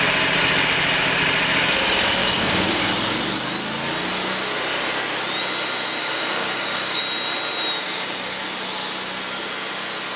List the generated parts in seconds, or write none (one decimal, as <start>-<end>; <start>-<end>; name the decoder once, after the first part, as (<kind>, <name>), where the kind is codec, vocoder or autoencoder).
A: 2.2-2.9 (codec, DAC); 6.0-7.0; 7.8-8.4